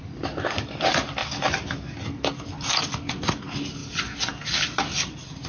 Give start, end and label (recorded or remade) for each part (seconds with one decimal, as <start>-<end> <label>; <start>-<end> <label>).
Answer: 0.0-1.2 remade; 1.2-2.8 recorded; 2.8-5.5 remade